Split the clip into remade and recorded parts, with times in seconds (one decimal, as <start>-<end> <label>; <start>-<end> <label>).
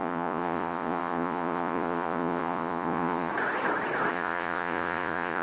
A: 0.0-3.3 remade; 3.3-4.1 recorded; 4.1-5.4 remade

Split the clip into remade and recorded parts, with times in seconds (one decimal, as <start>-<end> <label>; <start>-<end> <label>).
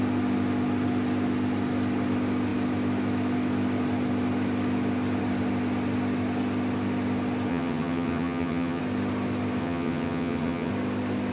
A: 0.0-7.5 recorded; 7.5-8.8 remade; 8.8-9.6 recorded; 9.6-10.7 remade; 10.7-11.3 recorded